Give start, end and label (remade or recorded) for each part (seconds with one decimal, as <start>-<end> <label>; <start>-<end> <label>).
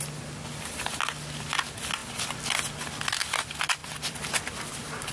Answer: 0.0-3.8 recorded; 3.8-5.1 remade